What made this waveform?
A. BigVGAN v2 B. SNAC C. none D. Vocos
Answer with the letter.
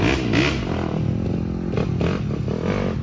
C